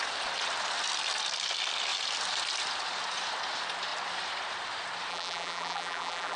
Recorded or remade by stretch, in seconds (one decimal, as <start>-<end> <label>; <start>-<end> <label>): 0.0-5.1 recorded; 5.1-6.4 remade